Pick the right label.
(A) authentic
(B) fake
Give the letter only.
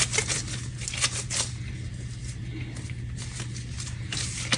A